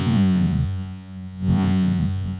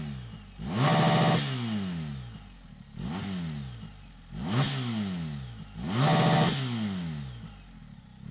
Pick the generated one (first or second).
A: first